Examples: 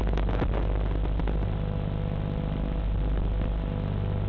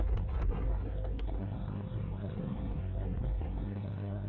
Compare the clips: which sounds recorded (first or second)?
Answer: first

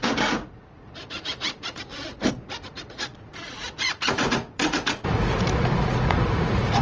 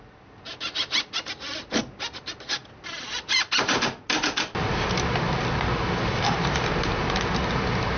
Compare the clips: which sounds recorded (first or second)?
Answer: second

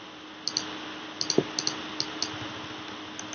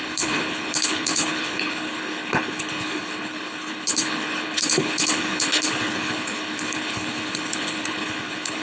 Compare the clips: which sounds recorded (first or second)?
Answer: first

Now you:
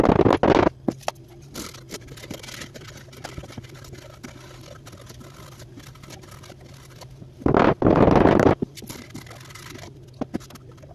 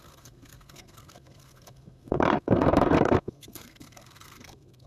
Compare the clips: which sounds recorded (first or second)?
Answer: first